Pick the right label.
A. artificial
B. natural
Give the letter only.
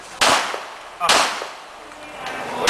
B